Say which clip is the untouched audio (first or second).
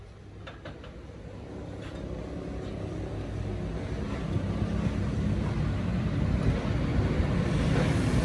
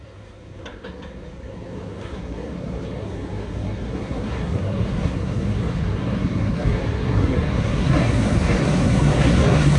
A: first